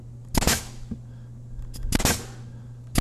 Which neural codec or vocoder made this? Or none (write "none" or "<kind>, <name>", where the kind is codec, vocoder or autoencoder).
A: none